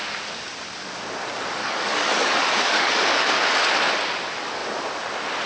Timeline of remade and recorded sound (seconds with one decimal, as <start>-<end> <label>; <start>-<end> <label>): 0.0-1.6 recorded; 1.6-3.7 remade; 3.7-5.5 recorded